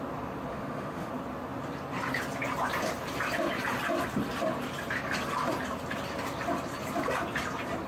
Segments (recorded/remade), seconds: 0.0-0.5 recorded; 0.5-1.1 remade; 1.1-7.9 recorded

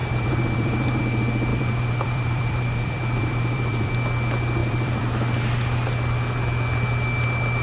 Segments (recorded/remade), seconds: 0.0-1.0 remade; 1.0-1.5 recorded; 1.5-3.9 remade; 3.9-4.6 recorded; 4.6-5.1 remade; 5.1-7.6 recorded

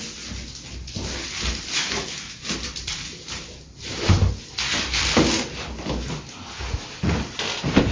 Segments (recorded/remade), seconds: 0.0-1.8 recorded; 1.8-2.4 remade; 2.4-7.9 recorded

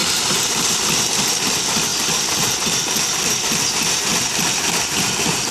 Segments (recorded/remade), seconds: 0.0-1.4 remade; 1.4-1.9 recorded; 1.9-3.0 remade; 3.0-5.5 recorded

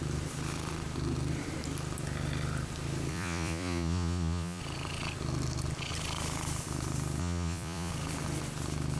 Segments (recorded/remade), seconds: 0.0-3.1 recorded; 3.1-4.6 remade; 4.6-7.2 recorded; 7.2-7.9 remade; 7.9-9.0 recorded

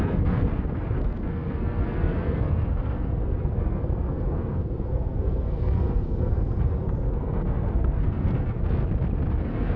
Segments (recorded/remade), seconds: 0.0-8.8 remade; 8.8-9.4 recorded; 9.4-9.8 remade